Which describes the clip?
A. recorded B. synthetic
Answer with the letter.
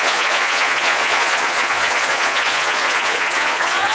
B